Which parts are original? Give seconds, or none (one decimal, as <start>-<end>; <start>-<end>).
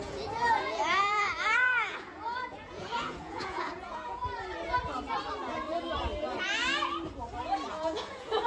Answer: 4.2-7.7